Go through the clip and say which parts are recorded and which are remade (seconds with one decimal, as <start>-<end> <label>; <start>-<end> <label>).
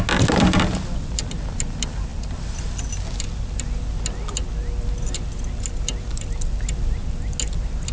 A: 0.0-7.9 recorded